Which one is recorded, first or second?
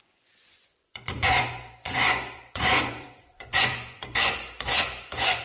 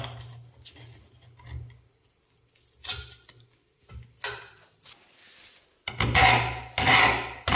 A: second